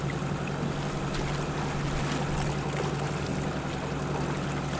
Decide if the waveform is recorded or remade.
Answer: recorded